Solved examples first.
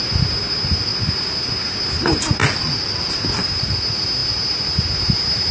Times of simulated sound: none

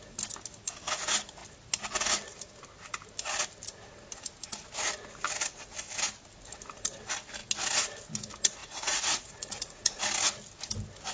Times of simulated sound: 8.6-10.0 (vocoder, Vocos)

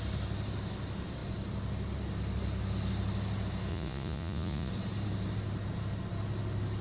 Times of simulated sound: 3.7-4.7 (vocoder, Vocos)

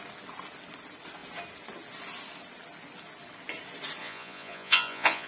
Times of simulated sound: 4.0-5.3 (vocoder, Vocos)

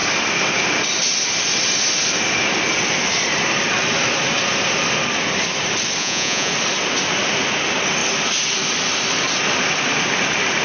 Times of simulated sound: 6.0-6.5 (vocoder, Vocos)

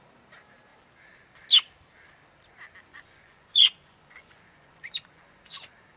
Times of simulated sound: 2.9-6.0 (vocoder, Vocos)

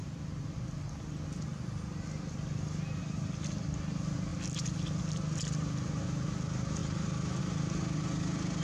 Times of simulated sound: none

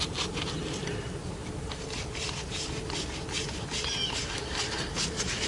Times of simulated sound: none